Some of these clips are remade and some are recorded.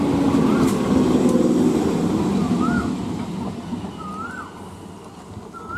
recorded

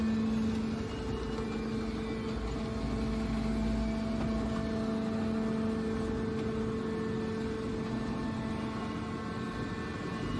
recorded